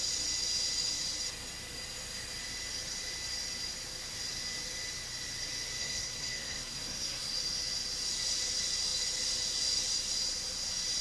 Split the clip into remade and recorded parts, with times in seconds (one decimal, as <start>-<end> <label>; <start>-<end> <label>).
0.0-5.8 recorded; 5.8-7.3 remade; 7.3-11.0 recorded